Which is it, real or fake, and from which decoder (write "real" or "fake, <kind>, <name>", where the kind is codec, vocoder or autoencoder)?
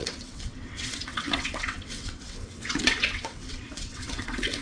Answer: fake, vocoder, WaveNeXt